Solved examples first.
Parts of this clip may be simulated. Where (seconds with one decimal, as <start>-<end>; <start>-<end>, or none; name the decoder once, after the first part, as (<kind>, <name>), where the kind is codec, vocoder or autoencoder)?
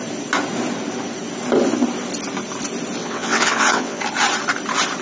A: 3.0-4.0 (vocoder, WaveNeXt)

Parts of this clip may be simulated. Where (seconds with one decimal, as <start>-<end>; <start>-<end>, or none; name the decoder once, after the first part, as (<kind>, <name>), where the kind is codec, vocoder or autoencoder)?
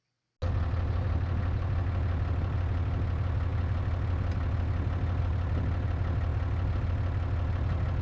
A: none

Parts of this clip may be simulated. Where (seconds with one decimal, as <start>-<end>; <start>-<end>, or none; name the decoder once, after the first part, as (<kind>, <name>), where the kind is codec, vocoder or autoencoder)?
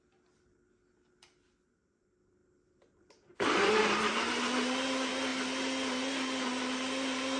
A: none